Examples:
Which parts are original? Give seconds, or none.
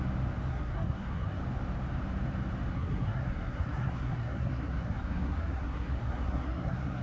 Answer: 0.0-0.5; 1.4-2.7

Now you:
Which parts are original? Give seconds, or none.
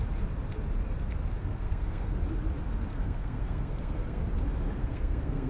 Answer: 0.0-1.4; 2.1-2.9; 4.2-4.8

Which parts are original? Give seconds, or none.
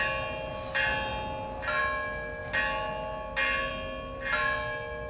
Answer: 0.0-5.1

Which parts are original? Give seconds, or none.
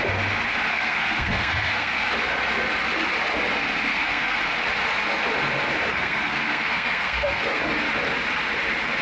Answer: 0.0-0.7; 2.1-3.9; 4.4-5.9; 7.6-9.0